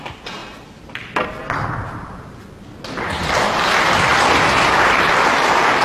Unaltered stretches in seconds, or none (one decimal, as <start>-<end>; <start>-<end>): 0.0-0.4; 2.4-4.1; 5.1-5.8